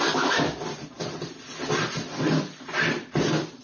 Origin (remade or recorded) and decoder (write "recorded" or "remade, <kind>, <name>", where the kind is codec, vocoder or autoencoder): recorded